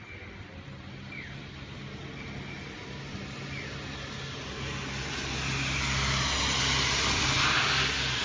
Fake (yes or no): no